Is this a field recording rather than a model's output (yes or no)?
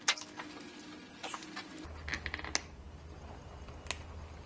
yes